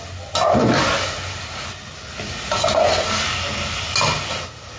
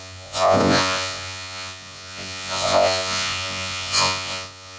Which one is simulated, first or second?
second